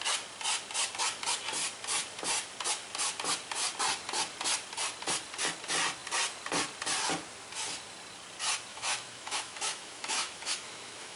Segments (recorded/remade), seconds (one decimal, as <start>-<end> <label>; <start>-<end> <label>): 0.0-8.7 recorded; 8.7-11.2 remade